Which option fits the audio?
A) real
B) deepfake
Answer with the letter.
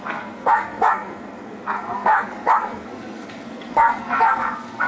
B